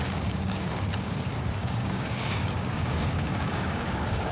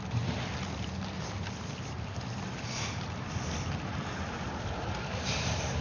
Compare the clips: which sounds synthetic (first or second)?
first